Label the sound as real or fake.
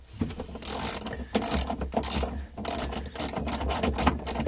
real